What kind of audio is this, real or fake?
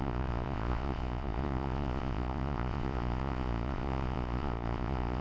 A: fake